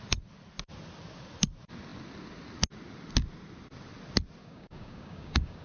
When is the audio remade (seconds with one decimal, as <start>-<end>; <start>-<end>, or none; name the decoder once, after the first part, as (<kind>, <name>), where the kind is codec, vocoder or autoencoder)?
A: 4.4-5.6 (codec, DAC)